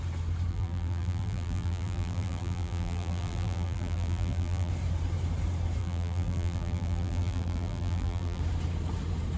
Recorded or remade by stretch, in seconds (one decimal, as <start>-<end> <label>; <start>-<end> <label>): 0.0-0.5 recorded; 0.5-4.7 remade; 4.7-5.8 recorded; 5.8-8.4 remade; 8.4-9.4 recorded